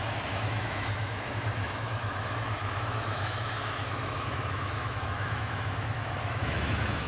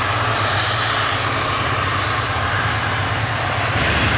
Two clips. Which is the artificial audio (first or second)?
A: first